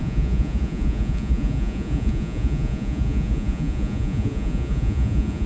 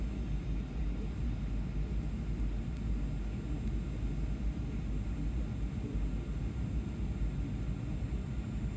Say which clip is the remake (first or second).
first